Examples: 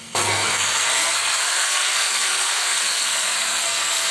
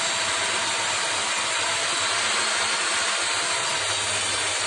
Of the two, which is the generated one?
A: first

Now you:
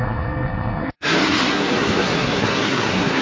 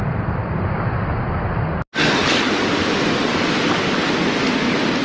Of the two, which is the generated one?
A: first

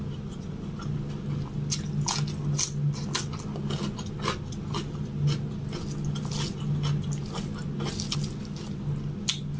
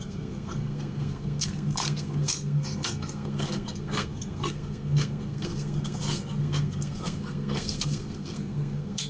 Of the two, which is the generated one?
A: second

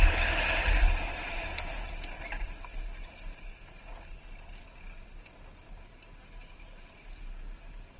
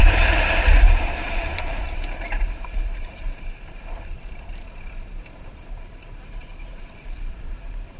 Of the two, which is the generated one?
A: second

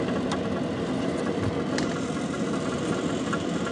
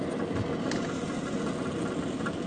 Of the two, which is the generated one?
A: first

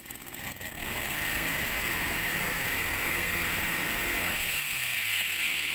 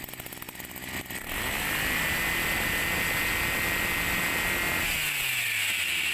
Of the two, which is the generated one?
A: first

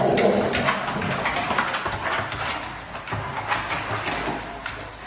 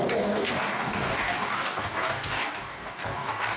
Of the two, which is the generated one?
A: second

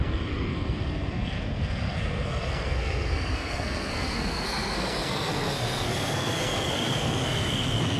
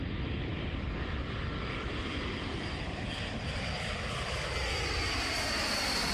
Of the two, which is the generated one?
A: first